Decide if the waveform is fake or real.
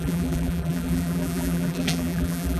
fake